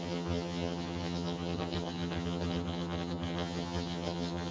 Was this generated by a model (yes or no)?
yes